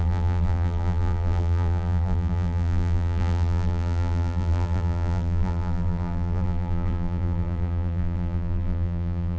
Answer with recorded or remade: remade